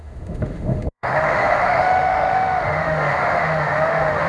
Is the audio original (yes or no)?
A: no